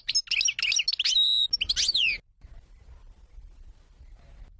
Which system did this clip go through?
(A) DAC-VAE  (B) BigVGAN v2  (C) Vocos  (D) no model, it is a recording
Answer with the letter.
D